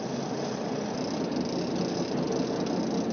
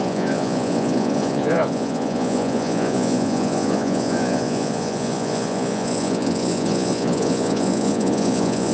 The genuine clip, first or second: first